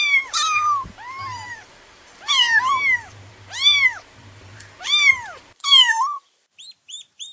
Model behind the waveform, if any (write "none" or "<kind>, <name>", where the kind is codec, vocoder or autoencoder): vocoder, BigVGAN v2